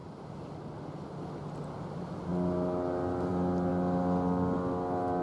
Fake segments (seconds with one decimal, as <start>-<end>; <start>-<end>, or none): none